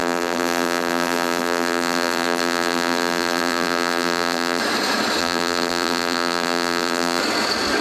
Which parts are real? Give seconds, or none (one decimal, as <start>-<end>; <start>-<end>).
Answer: 4.6-5.2; 7.2-7.8